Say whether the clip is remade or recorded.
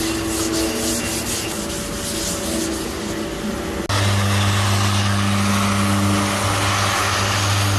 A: recorded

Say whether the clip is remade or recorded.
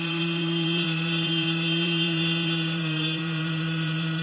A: remade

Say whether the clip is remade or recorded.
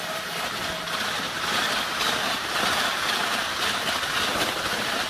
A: recorded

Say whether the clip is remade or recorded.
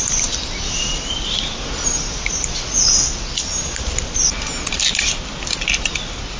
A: recorded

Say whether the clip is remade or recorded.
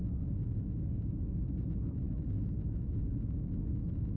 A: recorded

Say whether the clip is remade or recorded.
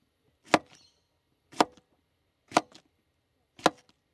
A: recorded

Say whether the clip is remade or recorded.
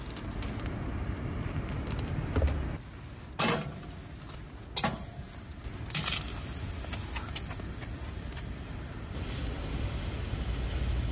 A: recorded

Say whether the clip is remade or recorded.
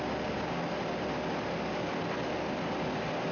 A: recorded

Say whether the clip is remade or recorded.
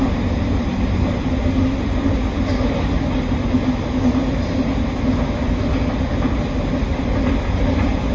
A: recorded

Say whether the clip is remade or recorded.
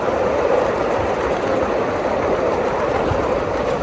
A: recorded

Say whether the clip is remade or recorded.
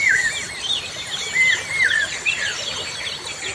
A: recorded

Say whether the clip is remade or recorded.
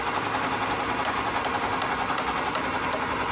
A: recorded